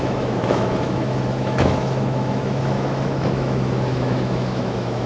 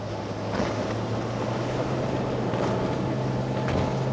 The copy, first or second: first